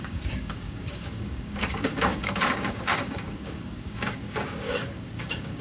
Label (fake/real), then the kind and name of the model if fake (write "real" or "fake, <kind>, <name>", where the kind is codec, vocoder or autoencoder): fake, codec, DAC